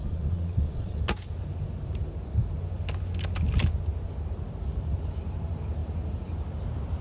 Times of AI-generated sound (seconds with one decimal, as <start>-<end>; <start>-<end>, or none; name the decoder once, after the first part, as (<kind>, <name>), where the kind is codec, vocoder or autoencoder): 0.0-1.0 (vocoder, Vocos)